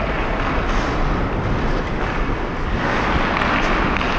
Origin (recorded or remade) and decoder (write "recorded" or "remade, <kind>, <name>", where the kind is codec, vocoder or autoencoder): recorded